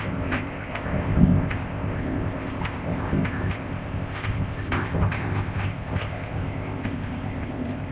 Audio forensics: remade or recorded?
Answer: remade